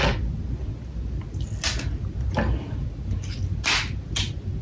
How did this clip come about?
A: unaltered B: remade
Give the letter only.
A